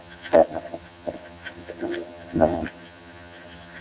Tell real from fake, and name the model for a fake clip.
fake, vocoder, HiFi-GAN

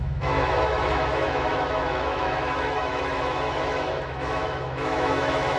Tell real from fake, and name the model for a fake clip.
fake, autoencoder, DAC-VAE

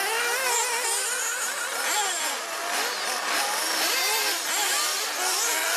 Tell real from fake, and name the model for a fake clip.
real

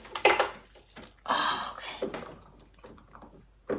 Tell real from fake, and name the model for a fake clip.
real